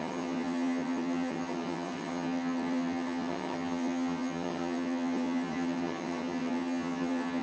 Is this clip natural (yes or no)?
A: no